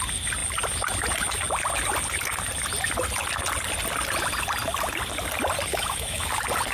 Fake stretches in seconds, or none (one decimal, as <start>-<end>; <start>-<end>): 5.7-6.3